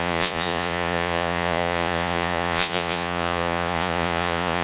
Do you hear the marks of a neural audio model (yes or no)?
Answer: yes